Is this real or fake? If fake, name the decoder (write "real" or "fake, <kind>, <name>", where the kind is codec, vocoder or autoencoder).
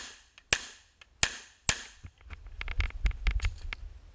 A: real